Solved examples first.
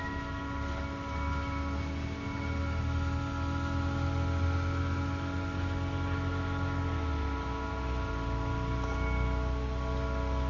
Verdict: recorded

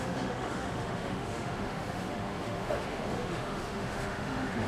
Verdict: remade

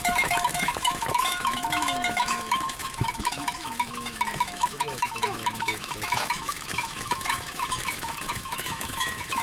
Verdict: remade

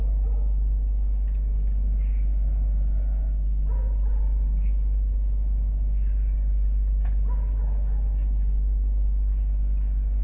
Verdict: recorded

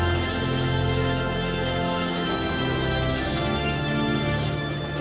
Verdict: remade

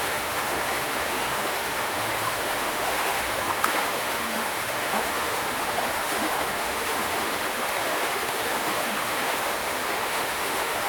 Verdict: remade